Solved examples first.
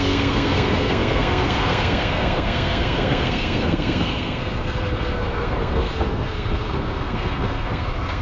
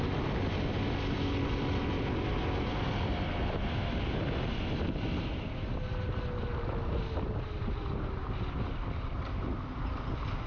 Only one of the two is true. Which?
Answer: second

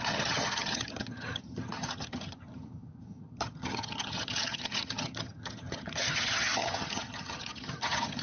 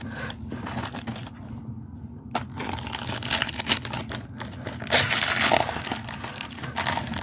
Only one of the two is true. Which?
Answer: second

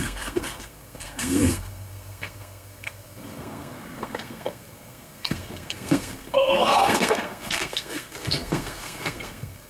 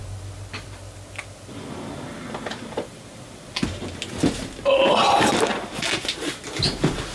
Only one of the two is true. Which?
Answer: second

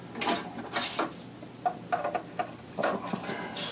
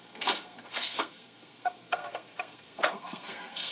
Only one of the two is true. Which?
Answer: first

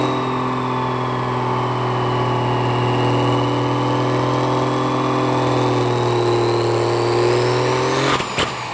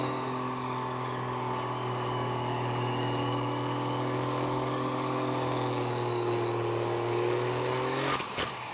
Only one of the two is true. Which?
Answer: first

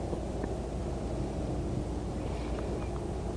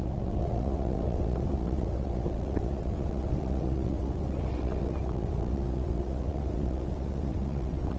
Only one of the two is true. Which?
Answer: first